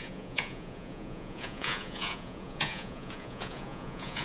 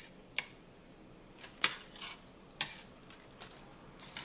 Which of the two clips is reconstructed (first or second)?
first